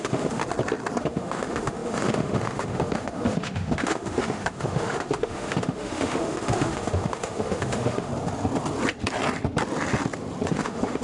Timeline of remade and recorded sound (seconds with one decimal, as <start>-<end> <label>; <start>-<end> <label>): 0.0-0.4 remade; 0.4-1.0 recorded; 1.0-8.1 remade; 8.1-10.5 recorded; 10.5-11.0 remade